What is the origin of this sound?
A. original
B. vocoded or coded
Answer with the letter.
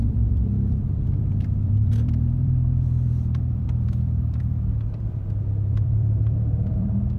B